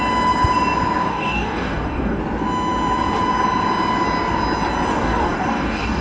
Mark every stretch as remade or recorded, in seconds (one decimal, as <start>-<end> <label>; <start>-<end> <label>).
0.0-1.1 recorded; 1.1-2.2 remade; 2.2-4.9 recorded; 4.9-6.0 remade